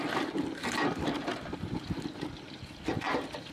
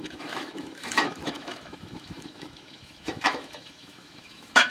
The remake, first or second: second